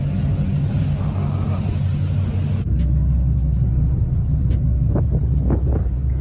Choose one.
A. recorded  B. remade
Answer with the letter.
A